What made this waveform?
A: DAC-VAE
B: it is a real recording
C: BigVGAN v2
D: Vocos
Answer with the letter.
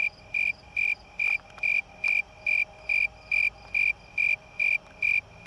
B